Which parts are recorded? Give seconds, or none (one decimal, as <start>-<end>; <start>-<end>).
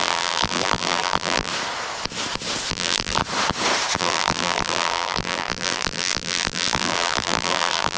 1.5-2.7; 3.2-4.0